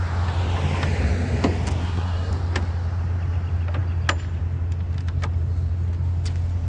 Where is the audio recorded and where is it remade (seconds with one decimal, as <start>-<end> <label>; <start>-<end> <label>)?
0.0-1.8 recorded; 1.8-2.3 remade; 2.3-6.7 recorded